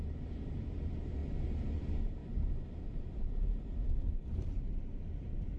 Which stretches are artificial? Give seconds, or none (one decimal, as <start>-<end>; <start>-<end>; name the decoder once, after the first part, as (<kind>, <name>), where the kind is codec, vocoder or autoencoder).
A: 0.0-1.2 (vocoder, BigVGAN v2); 1.8-2.2; 3.1-5.6